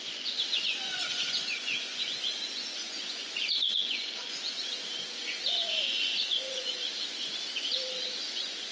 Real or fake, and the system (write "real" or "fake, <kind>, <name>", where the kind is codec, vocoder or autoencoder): fake, vocoder, Vocos